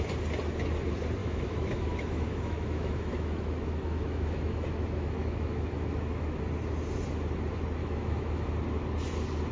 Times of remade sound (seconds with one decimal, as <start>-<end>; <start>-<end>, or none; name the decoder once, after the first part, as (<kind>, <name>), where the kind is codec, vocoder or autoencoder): 1.2-6.4 (autoencoder, DAC-VAE); 7.8-8.5